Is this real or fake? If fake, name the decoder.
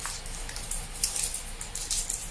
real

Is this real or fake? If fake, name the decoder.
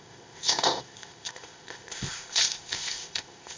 fake, codec, ZipCodec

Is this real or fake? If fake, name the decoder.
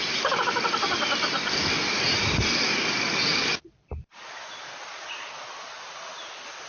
real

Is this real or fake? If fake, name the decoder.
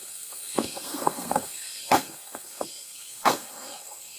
fake, codec, SNAC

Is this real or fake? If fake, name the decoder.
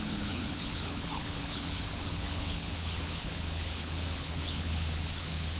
fake, codec, HILCodec